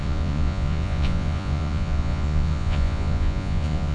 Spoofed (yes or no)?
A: yes